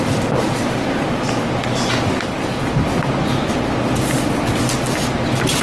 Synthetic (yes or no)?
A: no